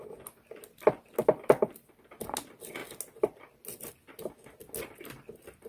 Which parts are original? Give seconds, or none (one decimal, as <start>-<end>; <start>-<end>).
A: 0.0-5.7